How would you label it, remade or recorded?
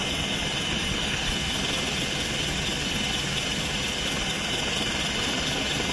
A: recorded